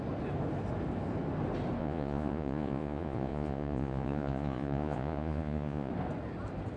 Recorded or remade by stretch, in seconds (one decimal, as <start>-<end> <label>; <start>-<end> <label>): 0.0-1.8 recorded; 1.8-5.9 remade; 5.9-6.8 recorded